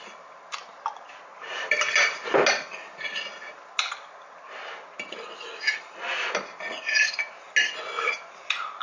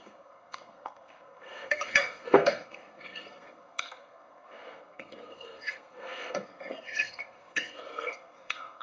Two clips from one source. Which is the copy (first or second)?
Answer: second